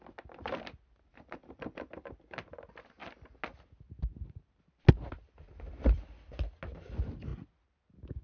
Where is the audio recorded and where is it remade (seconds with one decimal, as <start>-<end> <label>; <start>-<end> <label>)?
0.0-1.1 recorded; 1.1-1.9 remade; 1.9-8.2 recorded